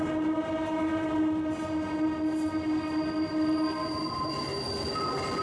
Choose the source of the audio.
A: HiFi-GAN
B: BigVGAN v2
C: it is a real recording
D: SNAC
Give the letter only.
C